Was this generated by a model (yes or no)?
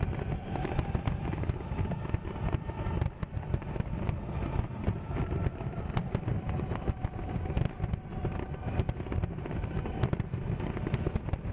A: no